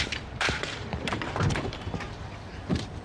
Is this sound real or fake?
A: fake